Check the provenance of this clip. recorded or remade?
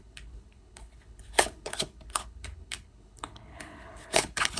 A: remade